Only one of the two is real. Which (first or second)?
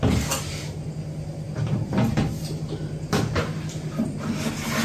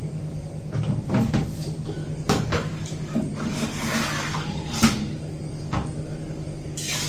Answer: first